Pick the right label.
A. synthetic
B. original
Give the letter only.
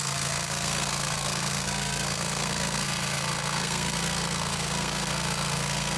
A